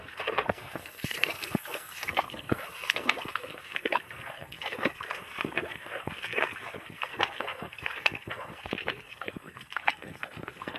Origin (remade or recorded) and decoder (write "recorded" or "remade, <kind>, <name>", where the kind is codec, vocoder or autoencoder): remade, codec, SNAC